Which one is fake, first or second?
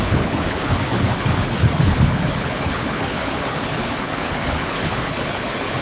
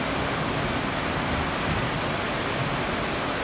first